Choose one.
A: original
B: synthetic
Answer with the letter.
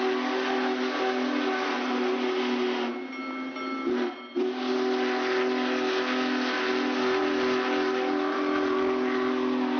A